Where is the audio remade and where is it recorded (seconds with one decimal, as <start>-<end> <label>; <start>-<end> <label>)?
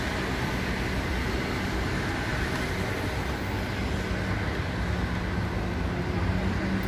0.0-6.9 recorded